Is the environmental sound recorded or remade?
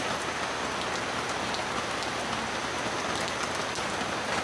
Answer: recorded